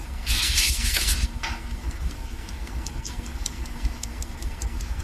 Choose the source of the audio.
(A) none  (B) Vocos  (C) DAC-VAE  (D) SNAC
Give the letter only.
D